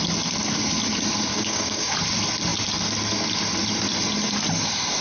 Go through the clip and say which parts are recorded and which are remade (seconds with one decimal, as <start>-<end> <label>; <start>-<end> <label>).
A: 0.0-1.3 recorded; 1.3-1.9 remade; 1.9-5.0 recorded